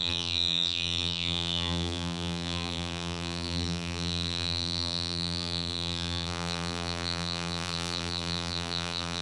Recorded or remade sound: remade